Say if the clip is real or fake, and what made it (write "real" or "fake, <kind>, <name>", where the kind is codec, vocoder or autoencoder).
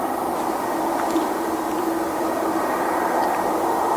fake, vocoder, BigVGAN v2